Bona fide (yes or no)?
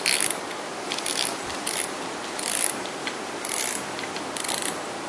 no